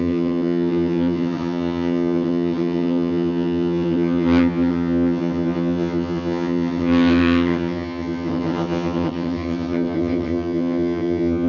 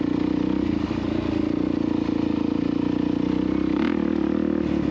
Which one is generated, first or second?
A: first